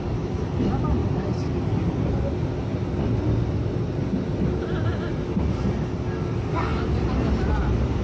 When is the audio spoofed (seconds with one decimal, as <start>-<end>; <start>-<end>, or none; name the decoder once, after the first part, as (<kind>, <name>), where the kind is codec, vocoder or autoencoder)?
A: none

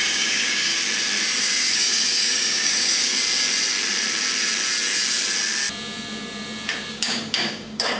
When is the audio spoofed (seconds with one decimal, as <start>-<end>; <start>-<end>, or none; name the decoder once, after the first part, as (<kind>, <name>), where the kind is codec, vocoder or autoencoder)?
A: 0.0-0.7 (codec, DAC); 1.4-3.1; 6.9-8.0

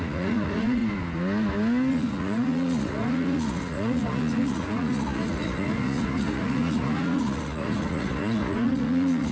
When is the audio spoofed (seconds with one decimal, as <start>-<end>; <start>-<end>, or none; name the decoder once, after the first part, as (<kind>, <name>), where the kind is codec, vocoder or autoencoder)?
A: 0.0-0.8 (vocoder, Vocos); 1.9-9.3